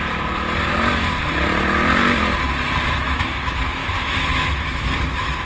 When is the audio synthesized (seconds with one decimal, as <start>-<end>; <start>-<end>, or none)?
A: 2.9-5.5